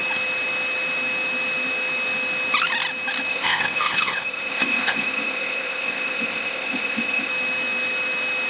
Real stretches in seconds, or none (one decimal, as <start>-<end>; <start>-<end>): 0.0-3.3; 7.3-8.5